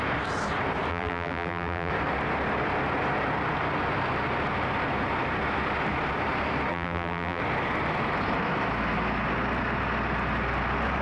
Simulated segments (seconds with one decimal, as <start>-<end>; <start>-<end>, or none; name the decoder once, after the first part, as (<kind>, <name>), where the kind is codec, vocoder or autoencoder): 0.9-1.9 (vocoder, BigVGAN v2); 6.7-7.4